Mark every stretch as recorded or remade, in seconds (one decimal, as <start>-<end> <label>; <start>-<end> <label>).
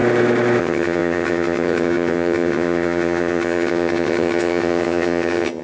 0.0-0.6 recorded; 0.6-5.6 remade